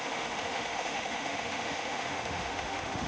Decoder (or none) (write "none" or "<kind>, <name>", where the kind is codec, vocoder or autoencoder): autoencoder, DAC-VAE